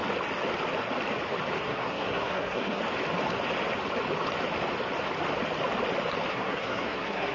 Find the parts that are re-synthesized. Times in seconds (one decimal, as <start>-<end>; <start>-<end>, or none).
1.6-2.8; 6.3-7.3